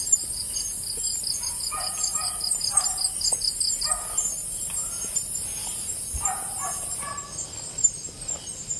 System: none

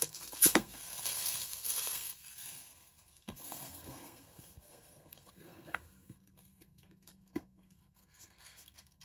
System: codec, SNAC